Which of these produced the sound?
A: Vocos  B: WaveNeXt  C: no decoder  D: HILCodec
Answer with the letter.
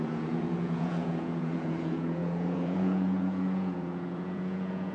A